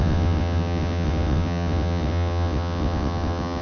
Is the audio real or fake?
fake